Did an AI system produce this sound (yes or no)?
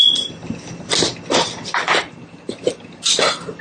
no